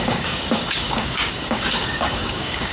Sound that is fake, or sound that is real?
fake